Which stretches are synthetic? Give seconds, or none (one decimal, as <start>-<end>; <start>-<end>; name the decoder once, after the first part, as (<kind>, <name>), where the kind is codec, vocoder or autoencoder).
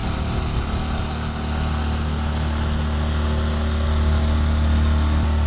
none